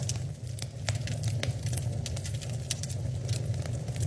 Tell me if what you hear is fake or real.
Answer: real